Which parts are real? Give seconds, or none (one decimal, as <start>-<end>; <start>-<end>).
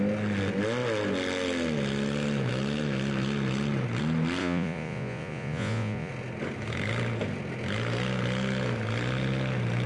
0.0-4.4; 6.1-9.9